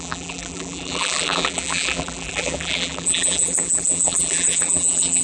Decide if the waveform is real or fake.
fake